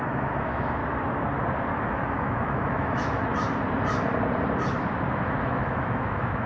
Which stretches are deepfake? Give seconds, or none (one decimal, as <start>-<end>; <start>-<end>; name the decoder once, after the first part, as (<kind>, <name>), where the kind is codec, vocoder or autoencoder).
0.0-0.8 (autoencoder, DAC-VAE); 1.7-3.2; 5.4-6.5